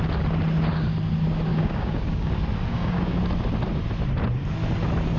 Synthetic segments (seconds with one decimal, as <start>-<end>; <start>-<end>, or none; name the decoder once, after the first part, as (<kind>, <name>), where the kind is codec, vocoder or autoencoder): 1.5-2.3 (codec, DAC); 2.7-3.2